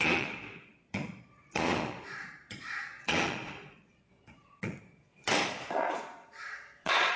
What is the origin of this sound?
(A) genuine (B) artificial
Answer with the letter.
B